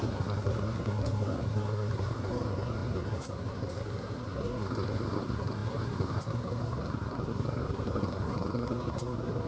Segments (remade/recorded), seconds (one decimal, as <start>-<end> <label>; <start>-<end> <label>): 0.0-9.5 remade